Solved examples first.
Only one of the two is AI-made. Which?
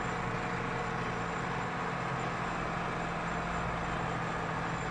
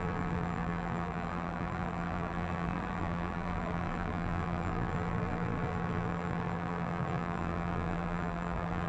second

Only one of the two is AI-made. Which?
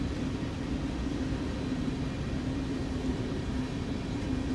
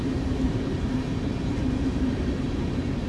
second